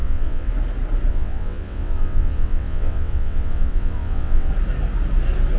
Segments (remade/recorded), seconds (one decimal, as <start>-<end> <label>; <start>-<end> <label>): 0.0-0.5 remade; 0.5-1.1 recorded; 1.1-4.5 remade; 4.5-5.6 recorded